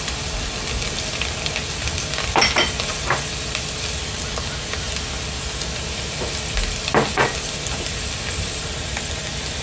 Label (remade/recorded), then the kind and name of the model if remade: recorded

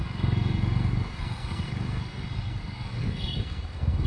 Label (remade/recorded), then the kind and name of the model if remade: remade, codec, SNAC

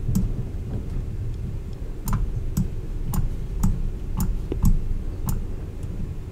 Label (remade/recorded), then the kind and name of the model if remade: recorded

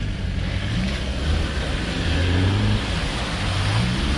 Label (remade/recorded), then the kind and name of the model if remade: recorded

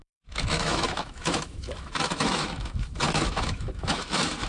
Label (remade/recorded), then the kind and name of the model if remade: remade, autoencoder, DAC-VAE